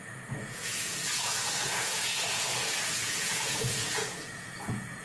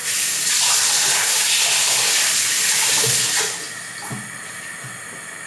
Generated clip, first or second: first